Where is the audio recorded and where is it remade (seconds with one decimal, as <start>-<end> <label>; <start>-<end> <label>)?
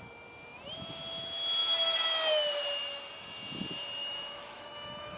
0.0-4.0 recorded; 4.0-5.2 remade